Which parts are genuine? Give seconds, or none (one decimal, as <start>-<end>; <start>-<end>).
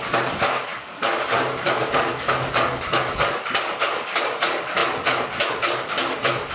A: none